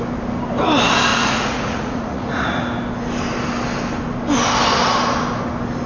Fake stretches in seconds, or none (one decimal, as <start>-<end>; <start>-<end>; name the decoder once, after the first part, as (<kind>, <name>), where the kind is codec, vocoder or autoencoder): 1.1-2.6 (vocoder, Vocos)